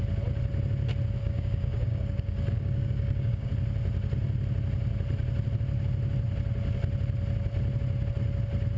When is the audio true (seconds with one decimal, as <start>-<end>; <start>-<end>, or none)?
0.0-1.2; 3.5-8.8